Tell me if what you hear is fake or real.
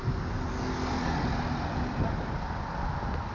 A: real